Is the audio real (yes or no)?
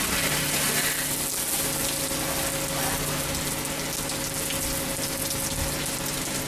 yes